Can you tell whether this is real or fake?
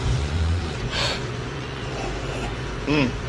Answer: fake